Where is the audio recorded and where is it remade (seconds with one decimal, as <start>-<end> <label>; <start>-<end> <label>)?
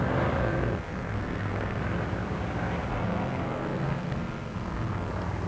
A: 0.0-0.4 recorded; 0.4-1.8 remade; 1.8-2.9 recorded; 2.9-5.1 remade; 5.1-5.5 recorded